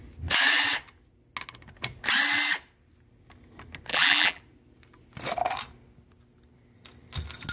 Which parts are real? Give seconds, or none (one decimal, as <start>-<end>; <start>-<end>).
0.0-3.9; 4.4-7.5